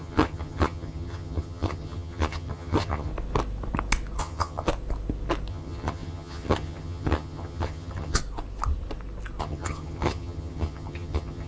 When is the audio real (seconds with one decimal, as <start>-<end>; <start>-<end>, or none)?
3.1-4.2; 4.7-5.5; 8.2-9.4